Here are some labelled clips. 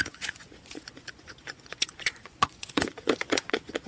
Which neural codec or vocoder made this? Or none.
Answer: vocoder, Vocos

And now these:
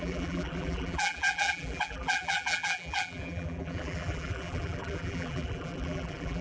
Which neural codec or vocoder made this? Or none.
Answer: vocoder, BigVGAN v2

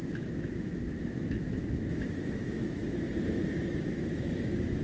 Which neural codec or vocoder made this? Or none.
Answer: autoencoder, DAC-VAE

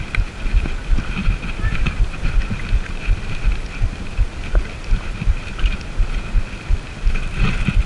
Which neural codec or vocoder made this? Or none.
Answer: none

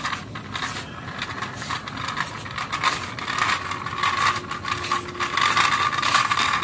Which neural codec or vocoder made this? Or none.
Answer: none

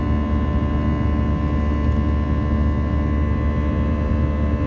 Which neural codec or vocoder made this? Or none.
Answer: none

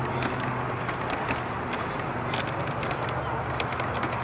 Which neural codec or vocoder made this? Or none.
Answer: none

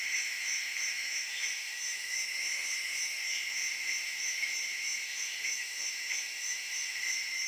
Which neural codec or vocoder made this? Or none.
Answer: autoencoder, DAC-VAE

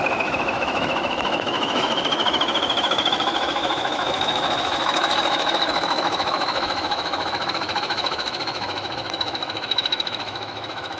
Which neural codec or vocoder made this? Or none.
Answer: autoencoder, DAC-VAE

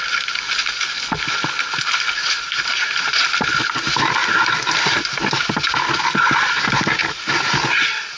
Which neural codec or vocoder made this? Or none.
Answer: none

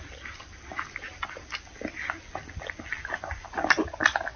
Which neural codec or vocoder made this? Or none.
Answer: none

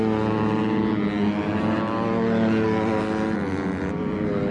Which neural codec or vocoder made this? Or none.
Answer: none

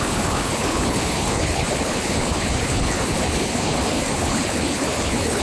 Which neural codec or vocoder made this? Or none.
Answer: codec, HILCodec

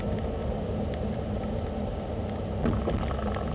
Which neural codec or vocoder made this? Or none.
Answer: none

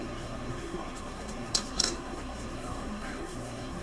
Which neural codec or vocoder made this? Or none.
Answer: codec, SNAC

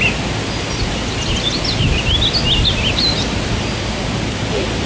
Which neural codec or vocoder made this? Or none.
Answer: none